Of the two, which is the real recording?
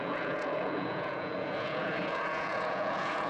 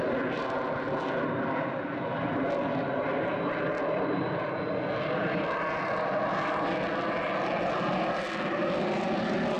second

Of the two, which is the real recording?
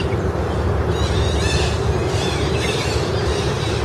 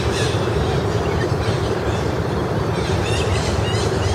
first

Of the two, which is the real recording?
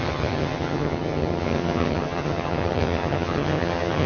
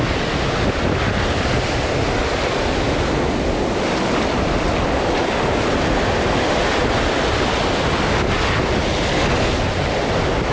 second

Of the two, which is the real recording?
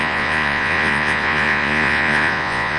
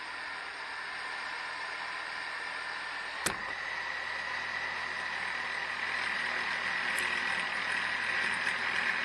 second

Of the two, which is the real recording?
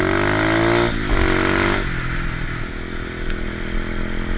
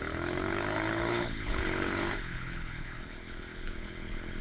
first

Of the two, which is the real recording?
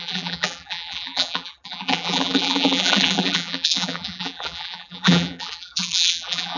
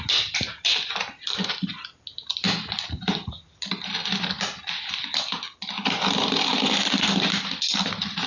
second